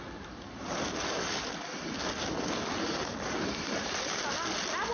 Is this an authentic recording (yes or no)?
yes